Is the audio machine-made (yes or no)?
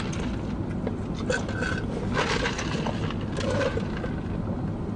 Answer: no